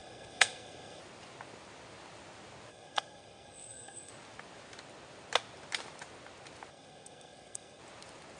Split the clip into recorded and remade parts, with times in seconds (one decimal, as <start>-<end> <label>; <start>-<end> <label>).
0.0-1.0 remade; 1.0-2.7 recorded; 2.7-4.1 remade; 4.1-6.7 recorded; 6.7-7.8 remade; 7.8-8.4 recorded